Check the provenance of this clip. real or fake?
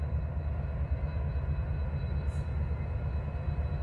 real